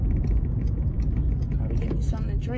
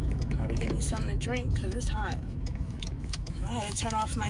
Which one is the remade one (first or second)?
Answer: second